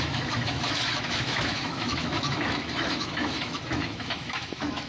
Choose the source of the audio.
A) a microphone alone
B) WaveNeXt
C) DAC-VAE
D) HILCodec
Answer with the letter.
C